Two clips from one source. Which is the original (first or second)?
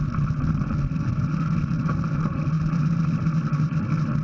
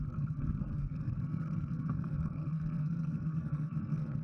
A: first